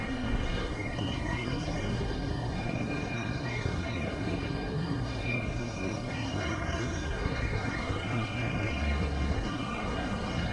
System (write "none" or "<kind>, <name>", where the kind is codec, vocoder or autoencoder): codec, SNAC